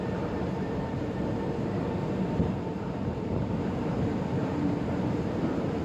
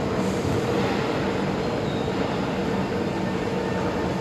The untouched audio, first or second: second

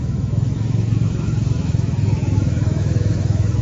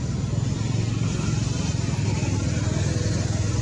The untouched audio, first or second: second